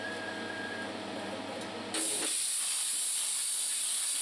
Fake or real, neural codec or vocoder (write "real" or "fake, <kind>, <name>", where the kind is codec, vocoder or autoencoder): real